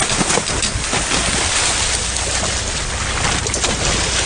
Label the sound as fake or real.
real